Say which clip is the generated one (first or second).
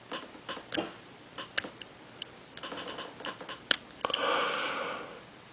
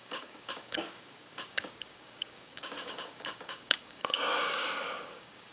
second